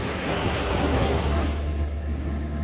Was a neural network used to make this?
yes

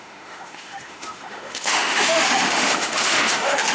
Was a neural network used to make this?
yes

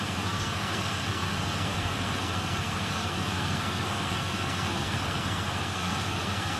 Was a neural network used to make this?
yes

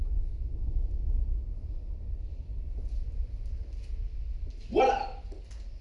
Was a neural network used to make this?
no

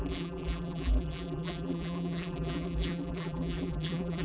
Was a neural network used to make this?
yes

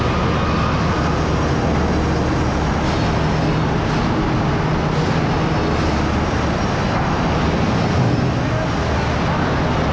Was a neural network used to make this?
no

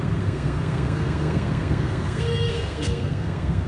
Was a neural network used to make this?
yes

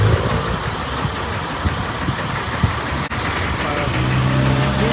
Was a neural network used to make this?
no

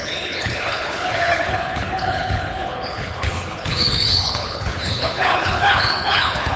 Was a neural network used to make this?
yes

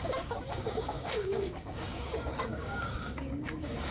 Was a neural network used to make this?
yes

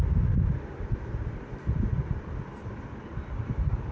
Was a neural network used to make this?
no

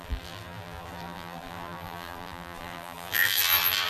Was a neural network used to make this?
yes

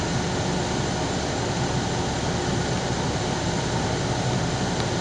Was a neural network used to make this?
no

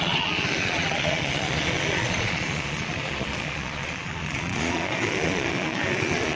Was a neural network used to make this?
yes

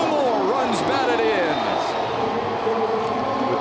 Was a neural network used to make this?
no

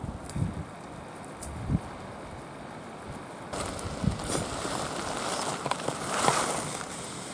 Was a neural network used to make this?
no